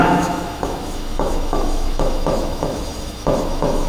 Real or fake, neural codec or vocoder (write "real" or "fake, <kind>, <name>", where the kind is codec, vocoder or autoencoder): fake, autoencoder, DAC-VAE